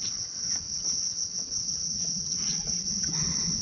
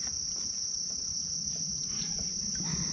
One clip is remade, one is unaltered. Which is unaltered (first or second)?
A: second